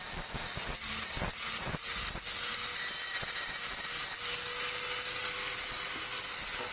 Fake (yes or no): no